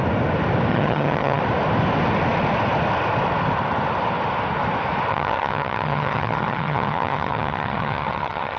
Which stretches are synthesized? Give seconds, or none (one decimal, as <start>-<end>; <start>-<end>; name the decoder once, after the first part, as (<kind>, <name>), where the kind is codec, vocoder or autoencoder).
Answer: 0.7-1.4 (vocoder, HiFi-GAN); 5.1-8.6